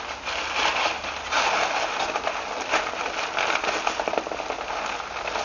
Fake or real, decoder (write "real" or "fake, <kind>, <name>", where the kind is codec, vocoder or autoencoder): real